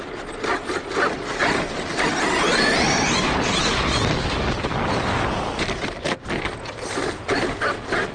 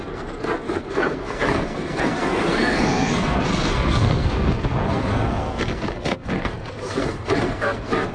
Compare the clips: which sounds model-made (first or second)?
second